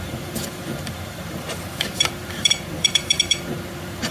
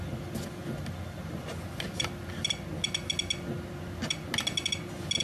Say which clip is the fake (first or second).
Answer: first